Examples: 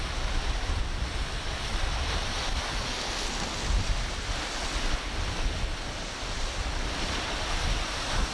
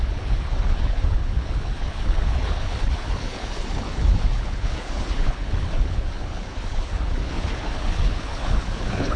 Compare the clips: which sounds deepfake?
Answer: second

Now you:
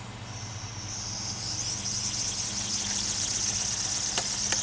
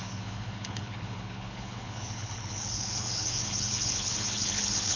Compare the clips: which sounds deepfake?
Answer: second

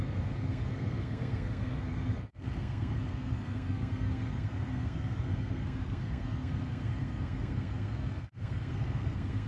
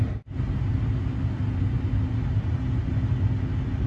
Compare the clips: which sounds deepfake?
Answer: first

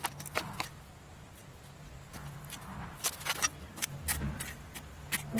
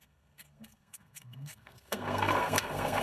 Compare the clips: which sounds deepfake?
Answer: second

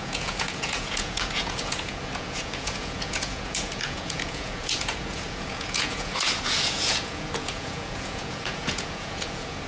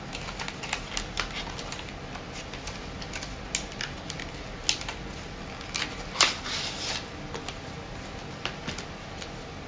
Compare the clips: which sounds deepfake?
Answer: first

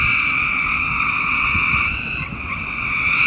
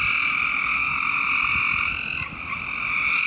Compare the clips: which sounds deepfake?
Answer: first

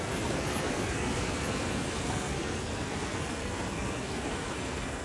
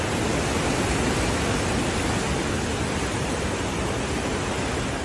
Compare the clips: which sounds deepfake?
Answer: first